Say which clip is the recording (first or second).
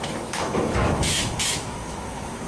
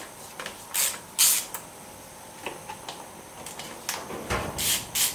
second